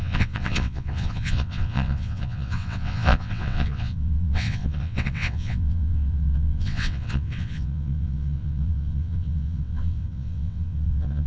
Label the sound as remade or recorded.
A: remade